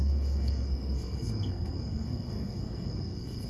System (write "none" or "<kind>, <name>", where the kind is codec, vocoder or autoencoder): codec, SNAC